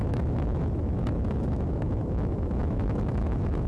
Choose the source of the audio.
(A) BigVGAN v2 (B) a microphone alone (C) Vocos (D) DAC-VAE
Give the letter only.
D